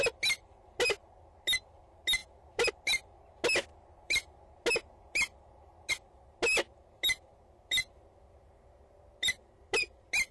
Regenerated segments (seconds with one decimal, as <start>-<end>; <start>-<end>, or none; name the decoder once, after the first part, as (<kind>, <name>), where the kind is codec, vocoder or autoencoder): none